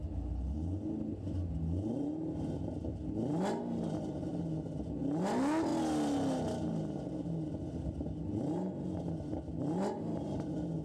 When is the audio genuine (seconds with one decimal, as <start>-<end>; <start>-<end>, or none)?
0.0-10.8

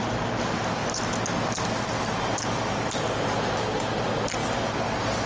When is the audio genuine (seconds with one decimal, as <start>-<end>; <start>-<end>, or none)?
0.0-5.3